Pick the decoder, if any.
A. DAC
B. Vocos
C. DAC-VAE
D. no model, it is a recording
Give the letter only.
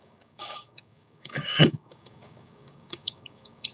A